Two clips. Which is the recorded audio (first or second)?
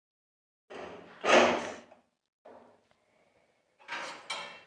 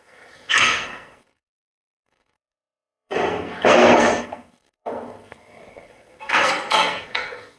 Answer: first